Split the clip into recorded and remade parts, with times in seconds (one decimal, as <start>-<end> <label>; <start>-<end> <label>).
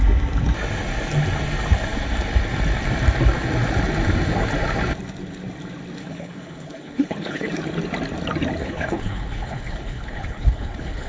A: 0.0-6.0 recorded; 6.0-7.5 remade; 7.5-8.6 recorded; 8.6-11.1 remade